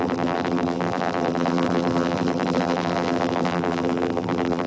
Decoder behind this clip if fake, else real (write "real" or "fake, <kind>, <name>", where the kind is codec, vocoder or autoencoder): fake, vocoder, BigVGAN v2